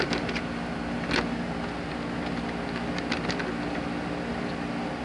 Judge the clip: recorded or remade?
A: recorded